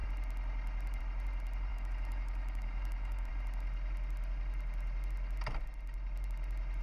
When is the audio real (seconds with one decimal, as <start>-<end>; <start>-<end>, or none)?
0.0-1.7; 3.3-6.8